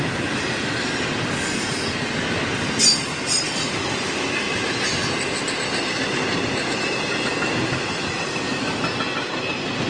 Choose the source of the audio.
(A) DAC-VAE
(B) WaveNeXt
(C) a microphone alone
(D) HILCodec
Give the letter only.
C